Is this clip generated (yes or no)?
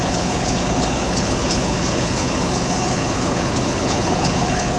yes